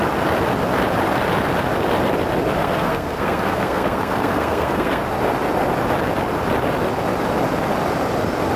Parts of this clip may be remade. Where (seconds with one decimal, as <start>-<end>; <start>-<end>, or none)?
2.6-5.0